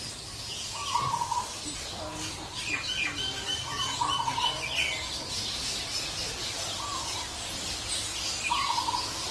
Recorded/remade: recorded